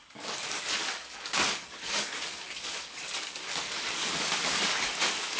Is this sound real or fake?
fake